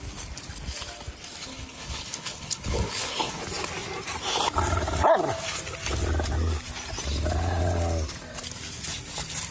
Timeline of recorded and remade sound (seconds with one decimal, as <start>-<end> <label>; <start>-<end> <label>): 0.0-1.4 recorded; 1.4-3.4 remade; 3.4-9.5 recorded